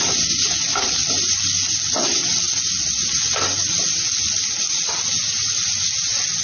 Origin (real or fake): real